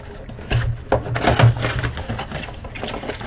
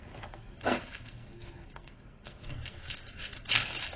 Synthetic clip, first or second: second